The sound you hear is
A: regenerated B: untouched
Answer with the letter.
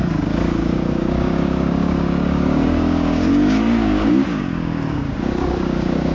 A